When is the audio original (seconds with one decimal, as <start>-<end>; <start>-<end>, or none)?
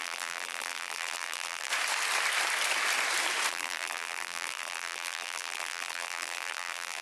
1.7-3.5